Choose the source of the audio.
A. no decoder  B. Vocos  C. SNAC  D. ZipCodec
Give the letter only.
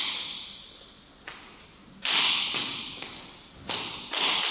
A